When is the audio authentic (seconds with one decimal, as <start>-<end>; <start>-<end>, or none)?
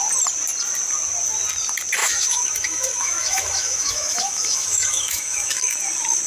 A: 0.0-2.0; 5.8-6.3